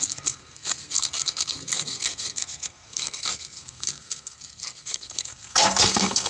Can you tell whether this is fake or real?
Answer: fake